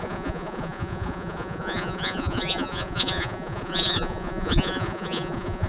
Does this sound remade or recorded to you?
remade